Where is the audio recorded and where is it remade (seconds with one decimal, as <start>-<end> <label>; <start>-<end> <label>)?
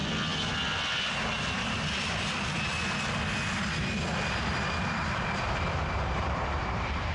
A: 0.0-4.3 recorded; 4.3-7.1 remade